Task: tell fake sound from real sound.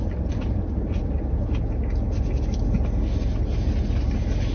real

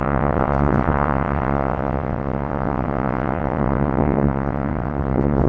fake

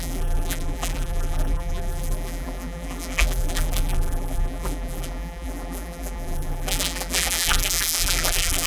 fake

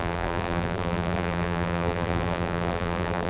fake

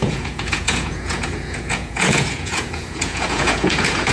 fake